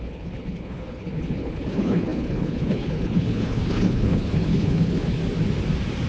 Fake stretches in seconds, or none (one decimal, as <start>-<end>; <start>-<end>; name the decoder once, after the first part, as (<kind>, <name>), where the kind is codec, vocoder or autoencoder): 0.0-5.2 (codec, HILCodec)